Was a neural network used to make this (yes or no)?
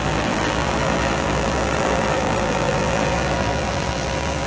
yes